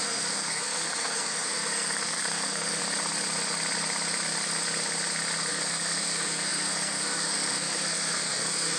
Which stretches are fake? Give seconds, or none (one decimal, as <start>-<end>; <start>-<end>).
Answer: 0.0-2.8; 5.5-8.8